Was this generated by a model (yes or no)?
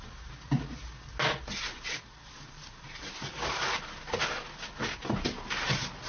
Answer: no